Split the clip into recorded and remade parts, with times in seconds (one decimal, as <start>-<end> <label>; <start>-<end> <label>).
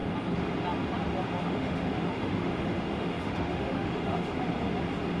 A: 0.0-1.4 recorded; 1.4-4.4 remade; 4.4-5.2 recorded